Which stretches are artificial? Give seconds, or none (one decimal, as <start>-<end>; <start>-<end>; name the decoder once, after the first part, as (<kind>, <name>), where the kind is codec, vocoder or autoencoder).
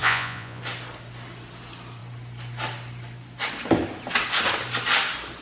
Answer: 0.0-0.6 (vocoder, Vocos)